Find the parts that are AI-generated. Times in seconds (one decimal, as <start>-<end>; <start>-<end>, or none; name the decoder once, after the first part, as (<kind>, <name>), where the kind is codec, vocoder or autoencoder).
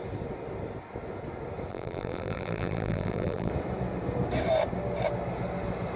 1.7-3.5 (vocoder, BigVGAN v2)